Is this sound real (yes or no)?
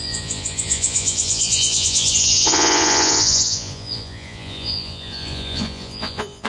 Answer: no